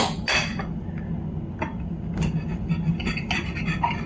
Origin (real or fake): real